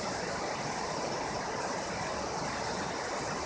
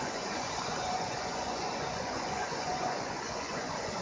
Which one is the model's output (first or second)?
second